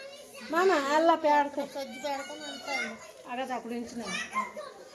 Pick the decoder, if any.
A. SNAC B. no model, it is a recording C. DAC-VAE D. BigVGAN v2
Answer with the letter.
B